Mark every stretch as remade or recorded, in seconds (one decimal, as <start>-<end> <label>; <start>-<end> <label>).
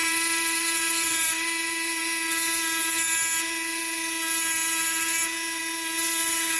0.0-2.0 remade; 2.0-6.6 recorded